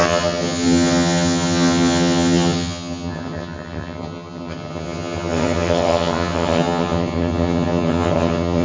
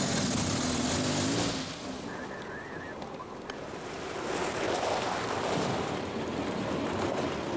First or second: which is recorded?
second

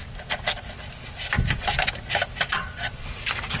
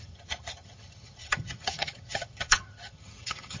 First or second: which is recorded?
first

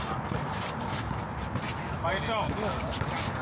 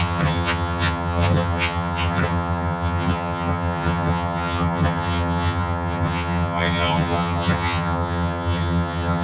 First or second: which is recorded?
first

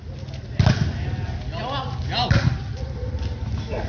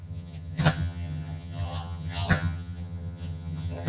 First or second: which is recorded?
first